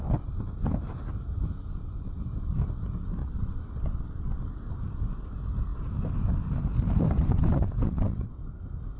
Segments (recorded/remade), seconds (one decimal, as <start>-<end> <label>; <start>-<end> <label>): 0.0-3.2 recorded; 3.2-4.4 remade; 4.4-7.2 recorded; 7.2-8.4 remade; 8.4-9.0 recorded